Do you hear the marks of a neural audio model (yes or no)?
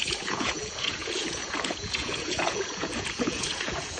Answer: yes